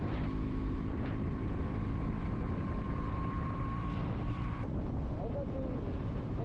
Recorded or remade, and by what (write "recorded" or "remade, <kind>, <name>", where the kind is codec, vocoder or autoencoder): remade, vocoder, BigVGAN v2